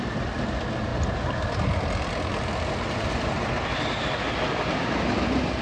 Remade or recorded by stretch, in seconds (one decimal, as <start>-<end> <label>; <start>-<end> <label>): 0.0-5.6 recorded